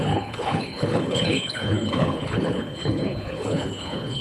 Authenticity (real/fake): fake